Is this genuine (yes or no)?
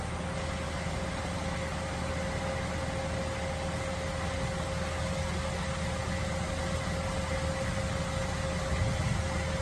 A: yes